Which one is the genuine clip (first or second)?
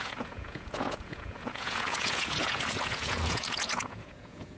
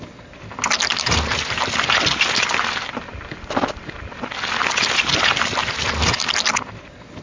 second